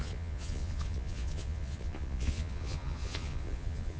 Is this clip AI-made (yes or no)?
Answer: yes